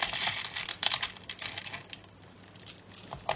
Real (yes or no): yes